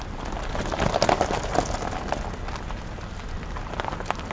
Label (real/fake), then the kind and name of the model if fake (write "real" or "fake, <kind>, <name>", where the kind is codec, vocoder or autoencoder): real